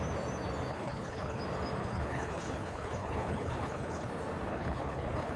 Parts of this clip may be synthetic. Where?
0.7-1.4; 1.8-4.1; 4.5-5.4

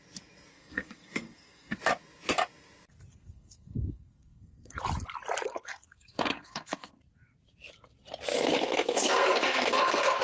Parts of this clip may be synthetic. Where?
0.5-1.8; 3.1-4.8; 5.5-6.9; 8.3-10.2

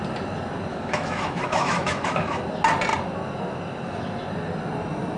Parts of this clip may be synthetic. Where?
0.7-2.4

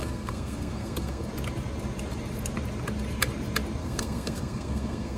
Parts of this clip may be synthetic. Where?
0.0-1.3; 3.8-5.2

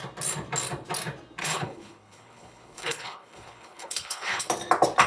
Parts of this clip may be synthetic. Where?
1.4-4.5